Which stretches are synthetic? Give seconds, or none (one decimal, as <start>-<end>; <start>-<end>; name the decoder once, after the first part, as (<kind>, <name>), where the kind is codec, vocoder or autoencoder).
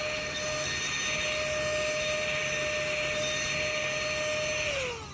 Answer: none